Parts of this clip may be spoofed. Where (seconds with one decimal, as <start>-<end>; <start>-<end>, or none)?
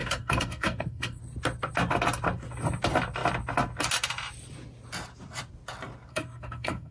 0.0-1.2; 6.1-6.9